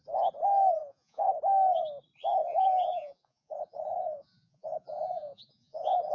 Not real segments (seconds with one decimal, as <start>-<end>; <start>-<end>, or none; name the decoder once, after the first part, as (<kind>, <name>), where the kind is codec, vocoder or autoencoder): 0.8-1.3 (vocoder, Vocos); 2.4-6.1